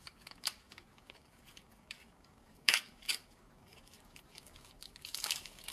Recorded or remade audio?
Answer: remade